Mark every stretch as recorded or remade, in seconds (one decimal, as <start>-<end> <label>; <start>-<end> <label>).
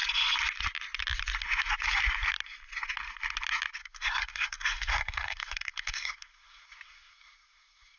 0.0-3.8 recorded; 3.8-8.0 remade